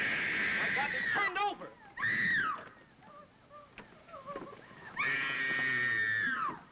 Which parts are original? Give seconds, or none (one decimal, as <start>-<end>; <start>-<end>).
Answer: 0.0-6.7